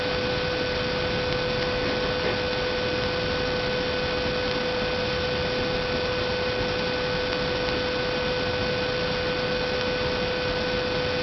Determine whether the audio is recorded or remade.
recorded